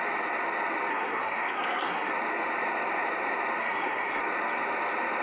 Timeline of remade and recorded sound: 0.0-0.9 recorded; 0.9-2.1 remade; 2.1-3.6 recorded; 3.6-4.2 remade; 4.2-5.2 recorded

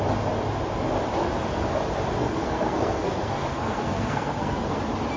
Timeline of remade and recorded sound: 0.0-2.2 recorded; 2.2-4.8 remade; 4.8-5.2 recorded